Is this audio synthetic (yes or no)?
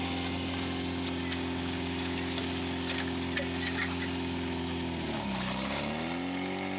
no